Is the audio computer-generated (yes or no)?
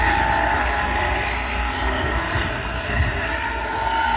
yes